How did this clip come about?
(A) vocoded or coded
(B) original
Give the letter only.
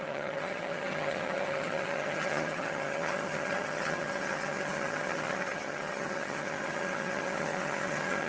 A